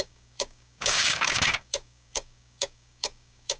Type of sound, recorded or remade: remade